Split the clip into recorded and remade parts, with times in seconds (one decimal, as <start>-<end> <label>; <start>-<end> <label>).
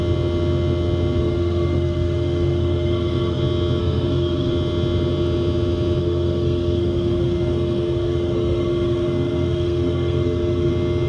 0.0-1.2 recorded; 1.2-3.4 remade; 3.4-3.8 recorded; 3.8-4.5 remade; 4.5-6.0 recorded; 6.0-10.7 remade; 10.7-11.1 recorded